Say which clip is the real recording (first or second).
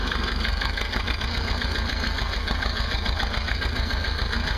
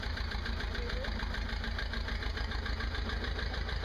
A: second